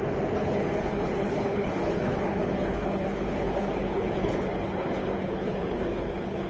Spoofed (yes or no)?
yes